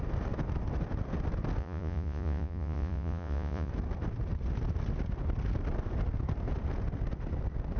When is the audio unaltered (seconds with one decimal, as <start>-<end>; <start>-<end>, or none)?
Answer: 0.0-1.6; 3.7-7.8